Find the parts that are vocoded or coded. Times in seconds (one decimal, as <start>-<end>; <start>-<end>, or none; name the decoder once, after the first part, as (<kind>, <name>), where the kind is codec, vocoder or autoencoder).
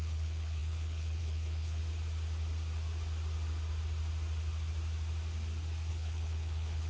0.0-1.8 (codec, HILCodec); 5.9-6.9